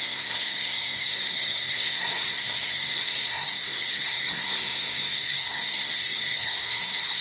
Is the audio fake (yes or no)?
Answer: yes